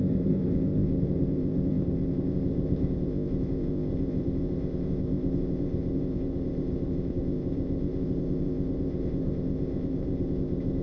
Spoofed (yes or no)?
yes